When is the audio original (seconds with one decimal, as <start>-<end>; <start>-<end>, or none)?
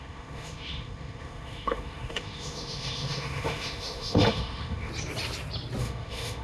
4.9-5.8